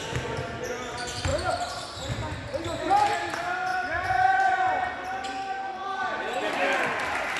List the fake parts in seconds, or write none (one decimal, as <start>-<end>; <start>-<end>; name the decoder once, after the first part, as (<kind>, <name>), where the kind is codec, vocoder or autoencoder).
3.7-4.4 (vocoder, BigVGAN v2)